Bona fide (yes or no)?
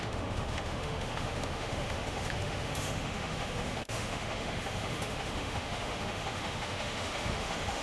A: no